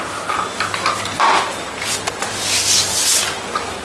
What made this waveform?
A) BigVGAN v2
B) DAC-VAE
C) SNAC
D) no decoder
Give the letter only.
D